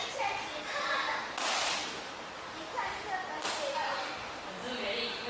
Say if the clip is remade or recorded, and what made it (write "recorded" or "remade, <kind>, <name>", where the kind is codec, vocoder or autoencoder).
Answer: recorded